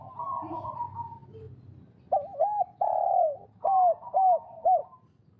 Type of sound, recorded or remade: recorded